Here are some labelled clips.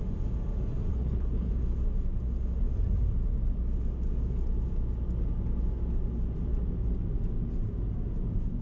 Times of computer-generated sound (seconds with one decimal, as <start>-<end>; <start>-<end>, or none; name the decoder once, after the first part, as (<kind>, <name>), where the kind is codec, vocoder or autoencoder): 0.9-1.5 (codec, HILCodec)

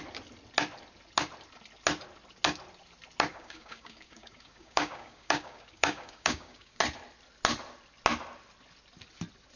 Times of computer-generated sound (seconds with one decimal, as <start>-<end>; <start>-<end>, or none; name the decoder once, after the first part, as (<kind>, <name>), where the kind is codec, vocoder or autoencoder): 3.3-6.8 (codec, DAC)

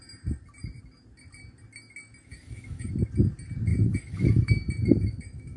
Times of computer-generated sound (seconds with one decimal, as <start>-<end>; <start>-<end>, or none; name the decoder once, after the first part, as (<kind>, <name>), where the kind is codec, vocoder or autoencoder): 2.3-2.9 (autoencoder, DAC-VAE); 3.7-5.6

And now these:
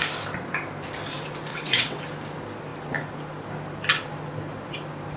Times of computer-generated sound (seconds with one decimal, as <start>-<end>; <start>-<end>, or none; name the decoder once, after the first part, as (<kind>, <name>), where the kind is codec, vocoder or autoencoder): 1.5-2.0 (vocoder, WaveNeXt)

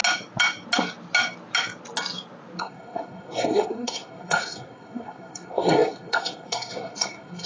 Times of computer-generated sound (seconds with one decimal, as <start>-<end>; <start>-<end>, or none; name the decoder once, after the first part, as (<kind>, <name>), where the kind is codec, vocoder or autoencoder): 2.6-7.5 (codec, SNAC)

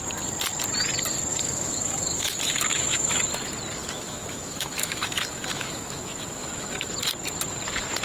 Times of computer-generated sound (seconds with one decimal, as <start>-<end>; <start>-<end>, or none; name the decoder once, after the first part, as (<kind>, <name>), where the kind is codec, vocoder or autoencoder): 1.3-3.2 (autoencoder, DAC-VAE); 3.8-6.9

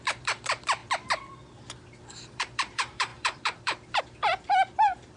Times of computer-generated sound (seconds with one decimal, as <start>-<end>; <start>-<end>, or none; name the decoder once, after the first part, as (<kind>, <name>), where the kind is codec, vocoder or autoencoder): 0.0-0.8 (vocoder, BigVGAN v2); 1.8-5.2